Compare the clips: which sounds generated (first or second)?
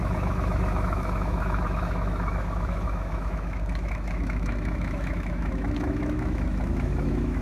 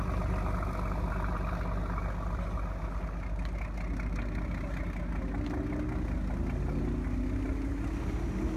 first